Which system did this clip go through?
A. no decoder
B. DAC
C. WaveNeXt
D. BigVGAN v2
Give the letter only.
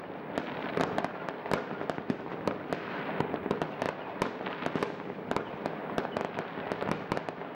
A